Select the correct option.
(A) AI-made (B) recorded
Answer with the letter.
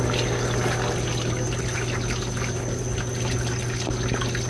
B